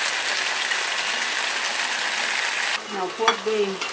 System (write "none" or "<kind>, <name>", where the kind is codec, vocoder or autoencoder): none